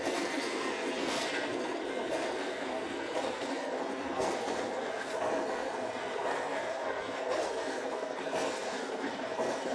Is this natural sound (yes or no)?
no